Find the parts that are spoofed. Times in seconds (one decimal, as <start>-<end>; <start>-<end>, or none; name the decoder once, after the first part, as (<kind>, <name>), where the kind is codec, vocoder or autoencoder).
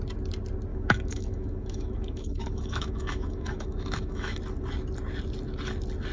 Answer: 0.7-4.4 (autoencoder, DAC-VAE)